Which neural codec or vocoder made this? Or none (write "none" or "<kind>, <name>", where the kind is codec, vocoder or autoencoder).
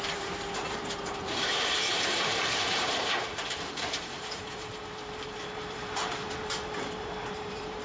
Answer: vocoder, BigVGAN v2